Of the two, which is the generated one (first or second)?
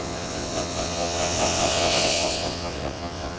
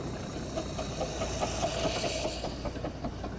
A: first